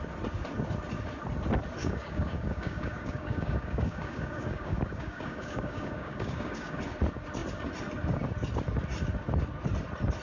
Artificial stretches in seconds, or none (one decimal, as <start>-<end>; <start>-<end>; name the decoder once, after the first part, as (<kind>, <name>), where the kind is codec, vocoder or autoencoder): 1.8-6.8 (codec, DAC)

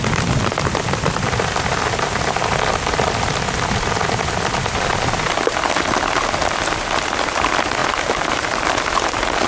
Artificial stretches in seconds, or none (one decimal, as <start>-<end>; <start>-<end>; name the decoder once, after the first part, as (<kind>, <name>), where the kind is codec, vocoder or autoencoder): 0.0-9.5 (vocoder, BigVGAN v2)

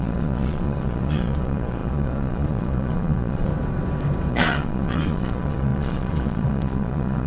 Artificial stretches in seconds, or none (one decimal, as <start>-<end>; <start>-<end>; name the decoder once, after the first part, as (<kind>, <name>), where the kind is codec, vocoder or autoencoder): 0.0-3.5 (vocoder, Vocos); 4.3-7.3

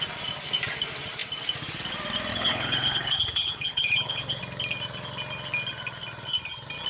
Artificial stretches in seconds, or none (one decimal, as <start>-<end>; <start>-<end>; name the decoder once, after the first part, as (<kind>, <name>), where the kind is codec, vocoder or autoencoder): 2.3-4.4 (codec, HILCodec)

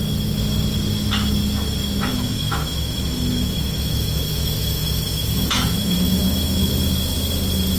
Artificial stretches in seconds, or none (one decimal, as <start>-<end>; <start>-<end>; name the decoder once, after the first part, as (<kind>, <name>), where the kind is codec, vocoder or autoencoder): 2.1-6.7 (autoencoder, DAC-VAE)